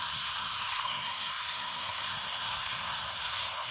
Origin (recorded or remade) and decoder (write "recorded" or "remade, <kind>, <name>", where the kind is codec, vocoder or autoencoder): remade, codec, SNAC